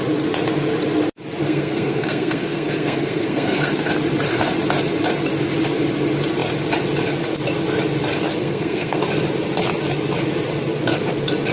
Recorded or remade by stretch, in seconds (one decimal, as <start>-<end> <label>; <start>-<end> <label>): 0.0-1.4 recorded; 1.4-3.7 remade; 3.7-8.4 recorded; 8.4-9.0 remade; 9.0-11.5 recorded